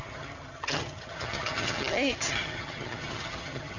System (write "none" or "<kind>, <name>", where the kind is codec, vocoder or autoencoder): vocoder, HiFi-GAN